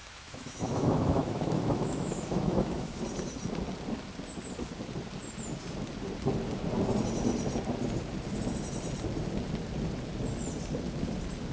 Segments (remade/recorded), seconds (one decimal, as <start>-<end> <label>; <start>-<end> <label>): 0.0-3.0 remade; 3.0-11.5 recorded